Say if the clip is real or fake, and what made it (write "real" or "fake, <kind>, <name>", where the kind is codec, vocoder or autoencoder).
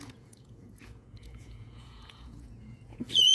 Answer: fake, vocoder, Vocos